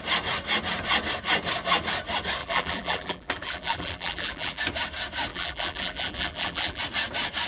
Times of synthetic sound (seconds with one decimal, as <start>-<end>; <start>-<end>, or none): 2.4-4.6; 5.3-6.8